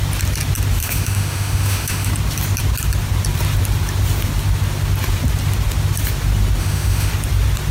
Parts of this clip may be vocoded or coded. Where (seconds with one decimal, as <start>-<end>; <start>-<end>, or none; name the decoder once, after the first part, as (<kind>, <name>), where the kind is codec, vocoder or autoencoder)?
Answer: 0.8-2.1 (autoencoder, DAC-VAE); 6.6-7.1